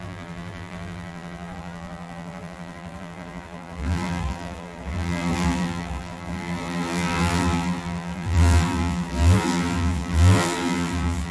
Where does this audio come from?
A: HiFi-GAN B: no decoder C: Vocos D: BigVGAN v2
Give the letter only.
D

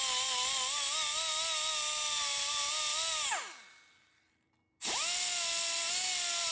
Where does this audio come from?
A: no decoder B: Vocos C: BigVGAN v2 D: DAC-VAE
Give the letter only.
A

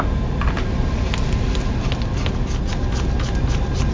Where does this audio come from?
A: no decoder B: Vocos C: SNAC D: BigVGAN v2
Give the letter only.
A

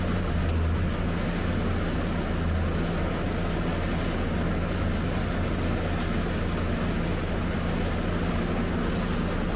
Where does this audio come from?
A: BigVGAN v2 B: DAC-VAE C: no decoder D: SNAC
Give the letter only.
C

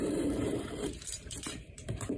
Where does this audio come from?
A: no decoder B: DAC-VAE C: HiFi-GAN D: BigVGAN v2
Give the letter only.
D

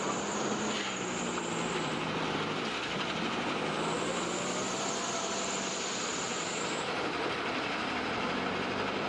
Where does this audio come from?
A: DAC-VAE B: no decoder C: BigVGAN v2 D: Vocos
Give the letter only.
C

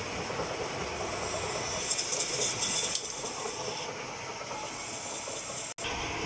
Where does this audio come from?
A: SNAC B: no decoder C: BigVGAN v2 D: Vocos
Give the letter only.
B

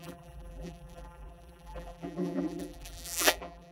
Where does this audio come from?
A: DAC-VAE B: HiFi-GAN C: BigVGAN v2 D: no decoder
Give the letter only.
C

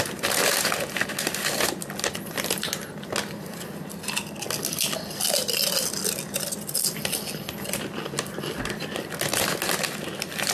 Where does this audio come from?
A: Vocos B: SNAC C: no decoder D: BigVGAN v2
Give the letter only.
C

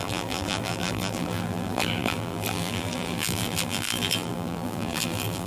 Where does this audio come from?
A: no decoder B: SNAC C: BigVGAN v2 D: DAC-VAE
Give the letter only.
C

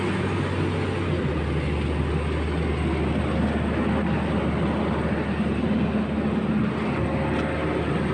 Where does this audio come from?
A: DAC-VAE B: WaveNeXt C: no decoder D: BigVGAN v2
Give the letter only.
C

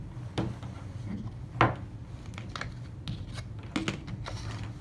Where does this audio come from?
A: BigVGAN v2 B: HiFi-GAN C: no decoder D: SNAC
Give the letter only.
C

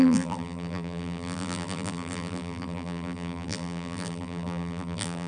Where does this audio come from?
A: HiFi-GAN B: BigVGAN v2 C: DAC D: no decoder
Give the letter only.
B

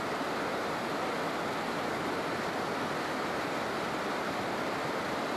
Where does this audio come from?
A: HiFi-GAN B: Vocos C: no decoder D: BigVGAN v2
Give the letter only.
C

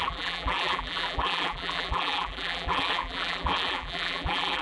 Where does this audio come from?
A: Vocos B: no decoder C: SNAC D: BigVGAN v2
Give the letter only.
D